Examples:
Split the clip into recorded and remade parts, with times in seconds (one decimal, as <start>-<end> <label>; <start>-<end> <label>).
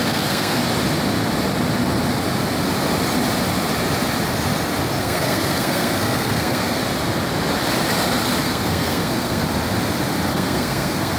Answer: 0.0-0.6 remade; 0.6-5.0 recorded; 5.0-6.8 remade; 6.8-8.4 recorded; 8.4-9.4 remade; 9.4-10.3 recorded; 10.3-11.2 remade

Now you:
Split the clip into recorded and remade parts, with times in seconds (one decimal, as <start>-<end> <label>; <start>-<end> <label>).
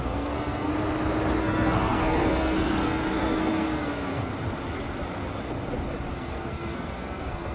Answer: 0.0-0.7 remade; 0.7-1.4 recorded; 1.4-4.3 remade; 4.3-6.1 recorded; 6.1-7.5 remade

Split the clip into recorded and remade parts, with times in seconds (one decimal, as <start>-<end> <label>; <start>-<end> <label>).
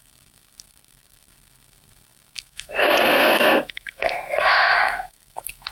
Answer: 0.0-5.7 remade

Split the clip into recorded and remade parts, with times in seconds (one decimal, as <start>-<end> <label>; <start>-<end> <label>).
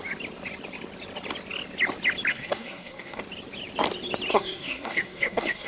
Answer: 0.0-2.3 recorded; 2.3-3.2 remade; 3.2-4.3 recorded; 4.3-5.7 remade